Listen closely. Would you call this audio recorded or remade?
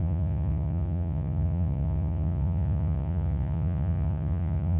remade